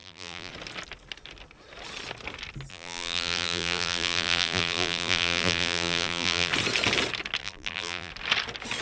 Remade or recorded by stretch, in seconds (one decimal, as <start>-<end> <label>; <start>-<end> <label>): 0.0-0.5 remade; 0.5-2.7 recorded; 2.7-6.5 remade; 6.5-7.4 recorded; 7.4-8.1 remade; 8.1-8.8 recorded